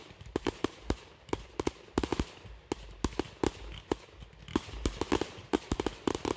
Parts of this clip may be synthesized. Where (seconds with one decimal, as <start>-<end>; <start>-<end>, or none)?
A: 0.0-2.1; 5.3-6.4